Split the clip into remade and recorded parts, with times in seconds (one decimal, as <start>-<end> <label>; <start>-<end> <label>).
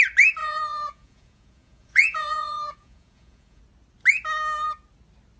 0.0-0.4 recorded; 0.4-3.6 remade; 3.6-5.4 recorded